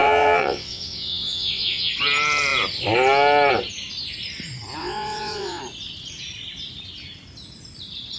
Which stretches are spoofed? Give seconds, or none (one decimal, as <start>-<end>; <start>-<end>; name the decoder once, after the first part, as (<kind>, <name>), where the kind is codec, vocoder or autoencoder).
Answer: 0.0-1.9 (vocoder, WaveNeXt); 4.8-5.6